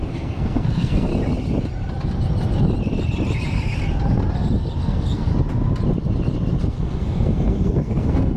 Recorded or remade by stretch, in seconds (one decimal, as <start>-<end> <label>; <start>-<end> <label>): 0.0-1.1 remade; 1.1-4.8 recorded; 4.8-5.3 remade; 5.3-6.6 recorded; 6.6-8.4 remade